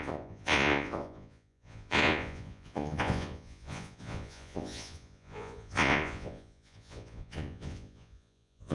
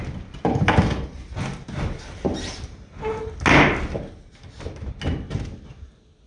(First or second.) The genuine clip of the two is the second